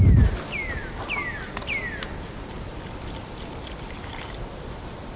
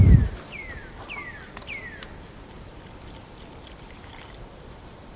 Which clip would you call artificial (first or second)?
second